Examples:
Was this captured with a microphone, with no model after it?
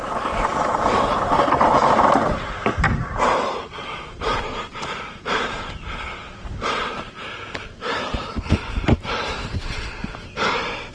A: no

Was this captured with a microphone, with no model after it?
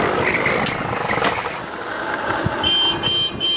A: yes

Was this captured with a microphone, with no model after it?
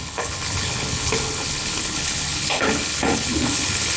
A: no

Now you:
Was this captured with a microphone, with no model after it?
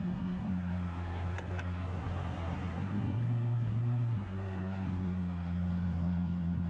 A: no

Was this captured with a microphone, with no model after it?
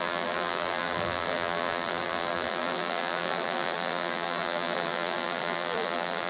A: no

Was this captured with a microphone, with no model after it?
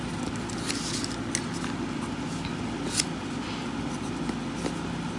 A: yes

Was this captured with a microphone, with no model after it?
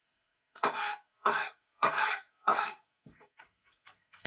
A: no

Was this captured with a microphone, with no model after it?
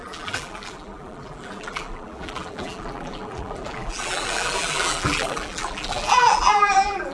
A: no